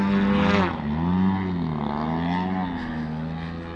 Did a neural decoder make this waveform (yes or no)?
no